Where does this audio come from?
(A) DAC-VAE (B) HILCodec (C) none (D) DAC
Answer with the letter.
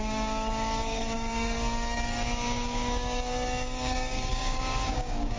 D